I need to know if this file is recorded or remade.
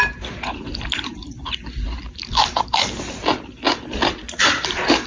recorded